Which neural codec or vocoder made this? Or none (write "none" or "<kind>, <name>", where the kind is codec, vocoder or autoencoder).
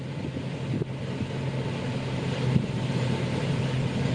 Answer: vocoder, BigVGAN v2